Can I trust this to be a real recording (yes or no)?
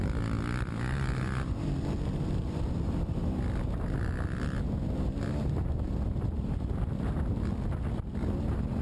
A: yes